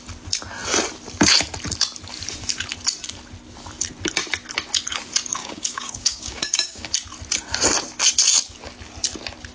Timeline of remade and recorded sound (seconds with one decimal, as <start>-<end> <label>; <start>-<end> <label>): 0.0-5.4 recorded; 5.4-6.9 remade; 6.9-9.5 recorded